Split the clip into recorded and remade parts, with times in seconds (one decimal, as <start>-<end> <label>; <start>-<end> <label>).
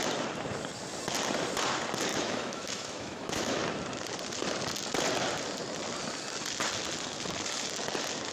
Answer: 0.0-2.1 recorded; 2.1-3.6 remade; 3.6-8.3 recorded